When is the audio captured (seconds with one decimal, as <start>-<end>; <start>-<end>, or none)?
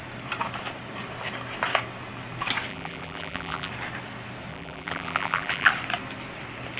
0.0-2.7; 3.7-4.5; 5.7-6.8